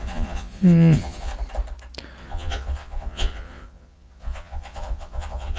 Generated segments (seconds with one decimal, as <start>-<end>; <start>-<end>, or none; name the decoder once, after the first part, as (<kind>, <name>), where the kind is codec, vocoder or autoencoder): 0.0-1.3 (vocoder, Vocos); 2.2-5.6